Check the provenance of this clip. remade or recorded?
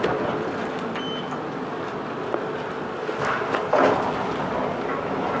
recorded